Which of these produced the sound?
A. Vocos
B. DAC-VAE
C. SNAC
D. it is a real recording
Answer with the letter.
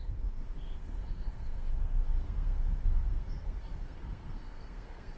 C